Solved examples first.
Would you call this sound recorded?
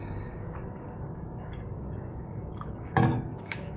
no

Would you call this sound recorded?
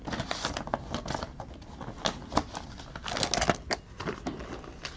yes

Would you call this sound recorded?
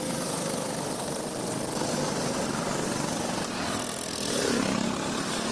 yes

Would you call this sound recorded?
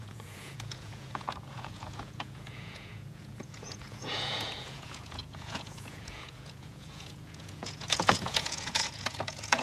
no